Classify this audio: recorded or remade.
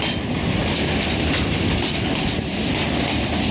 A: recorded